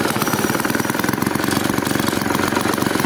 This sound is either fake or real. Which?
fake